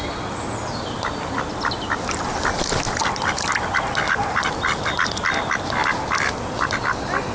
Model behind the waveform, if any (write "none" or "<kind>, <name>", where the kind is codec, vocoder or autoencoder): none